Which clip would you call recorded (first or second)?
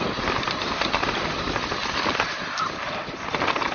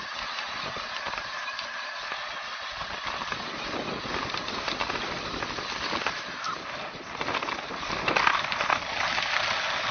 second